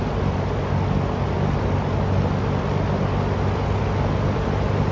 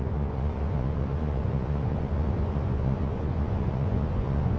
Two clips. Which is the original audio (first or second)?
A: first